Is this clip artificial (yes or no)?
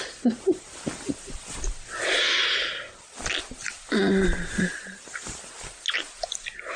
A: no